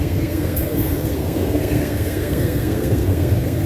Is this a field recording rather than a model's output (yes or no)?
no